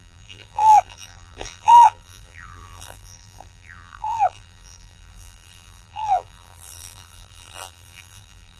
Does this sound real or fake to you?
fake